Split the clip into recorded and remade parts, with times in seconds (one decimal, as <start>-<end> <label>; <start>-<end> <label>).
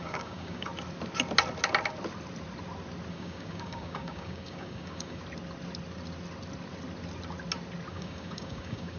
0.0-0.7 remade; 0.7-3.1 recorded; 3.1-5.2 remade; 5.2-7.9 recorded; 7.9-9.0 remade